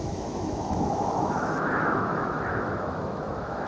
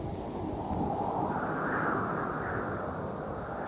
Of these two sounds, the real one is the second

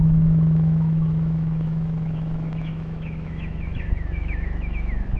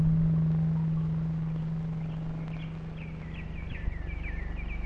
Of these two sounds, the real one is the second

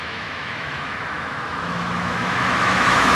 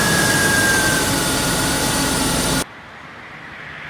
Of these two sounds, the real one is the second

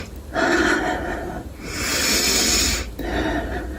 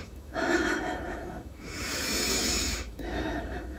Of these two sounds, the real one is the first